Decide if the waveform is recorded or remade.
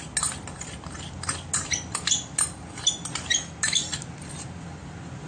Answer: recorded